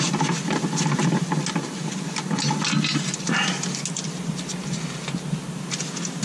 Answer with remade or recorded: recorded